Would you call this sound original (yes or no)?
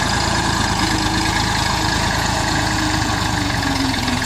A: no